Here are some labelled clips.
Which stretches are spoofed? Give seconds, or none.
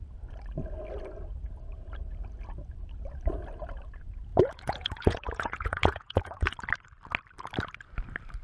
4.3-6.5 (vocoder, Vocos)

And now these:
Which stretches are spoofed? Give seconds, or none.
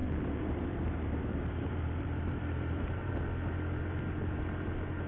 0.0-3.1 (vocoder, BigVGAN v2)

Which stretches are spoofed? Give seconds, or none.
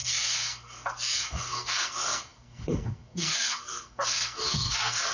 0.0-5.1 (codec, SNAC)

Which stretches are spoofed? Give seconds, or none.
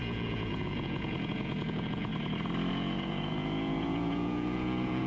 0.0-2.1 (vocoder, Vocos); 2.7-5.1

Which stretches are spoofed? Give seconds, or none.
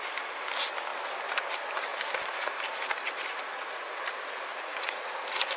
4.5-5.6 (vocoder, Vocos)